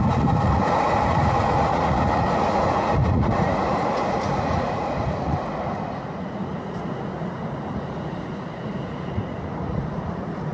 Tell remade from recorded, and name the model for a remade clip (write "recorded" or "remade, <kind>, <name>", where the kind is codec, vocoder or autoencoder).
remade, vocoder, Vocos